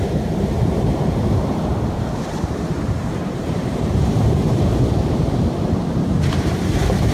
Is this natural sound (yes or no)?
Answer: no